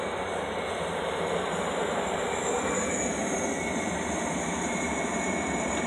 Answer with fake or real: fake